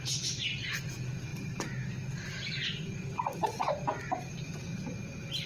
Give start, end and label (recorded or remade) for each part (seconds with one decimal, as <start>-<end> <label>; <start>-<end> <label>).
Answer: 0.0-5.5 recorded